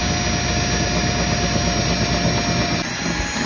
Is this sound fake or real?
real